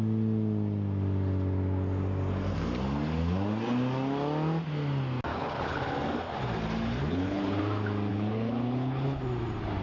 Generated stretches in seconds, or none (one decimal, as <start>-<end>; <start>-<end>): 5.3-5.8; 7.0-7.6; 8.1-9.2